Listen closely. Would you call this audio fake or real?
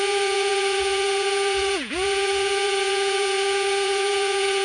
fake